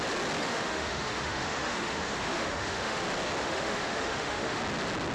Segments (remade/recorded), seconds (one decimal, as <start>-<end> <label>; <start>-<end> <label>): 0.0-0.4 recorded; 0.4-3.0 remade; 3.0-3.4 recorded; 3.4-4.6 remade; 4.6-5.1 recorded